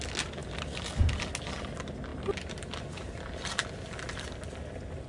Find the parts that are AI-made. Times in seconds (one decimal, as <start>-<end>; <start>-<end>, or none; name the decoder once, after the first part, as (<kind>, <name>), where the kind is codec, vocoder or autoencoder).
none